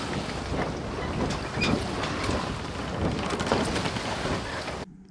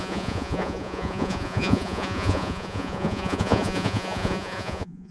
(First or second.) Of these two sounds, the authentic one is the first